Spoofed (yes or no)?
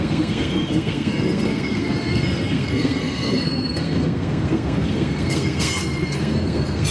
yes